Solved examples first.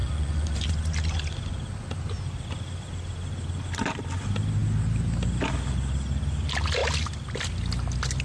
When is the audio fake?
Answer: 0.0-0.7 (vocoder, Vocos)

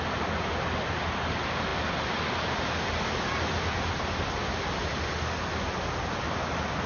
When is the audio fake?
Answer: none

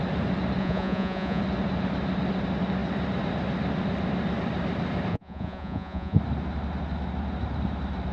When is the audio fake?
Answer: 0.6-1.4 (vocoder, Vocos); 5.1-6.2

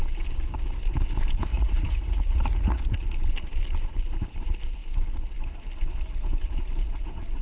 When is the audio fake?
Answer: 1.5-2.8 (vocoder, Vocos)